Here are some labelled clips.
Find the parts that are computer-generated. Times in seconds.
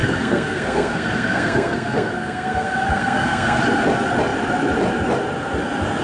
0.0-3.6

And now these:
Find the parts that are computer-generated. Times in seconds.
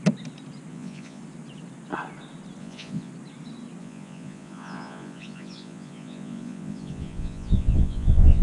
0.7-1.2; 2.6-3.1; 3.8-8.4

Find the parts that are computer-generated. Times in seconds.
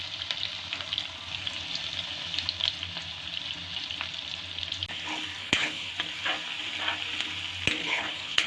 5.4-5.9; 7.8-8.5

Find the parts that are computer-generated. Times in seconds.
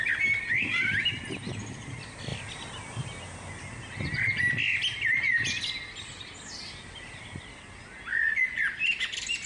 8.1-8.6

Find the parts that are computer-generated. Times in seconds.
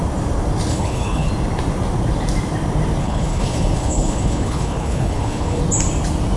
0.7-1.3; 3.0-5.6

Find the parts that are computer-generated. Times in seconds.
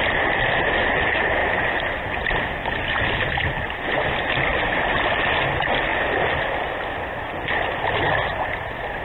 0.0-1.4; 4.3-9.0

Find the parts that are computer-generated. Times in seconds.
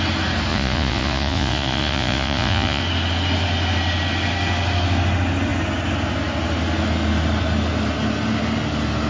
0.5-2.8